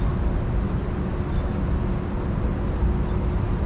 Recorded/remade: recorded